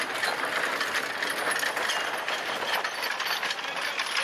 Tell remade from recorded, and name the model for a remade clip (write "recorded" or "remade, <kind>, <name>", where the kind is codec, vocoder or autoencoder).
recorded